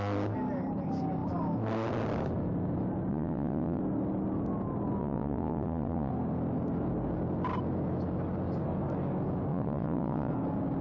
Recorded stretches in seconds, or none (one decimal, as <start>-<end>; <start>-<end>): 0.0-3.1; 3.8-5.0; 6.1-9.5; 10.3-10.8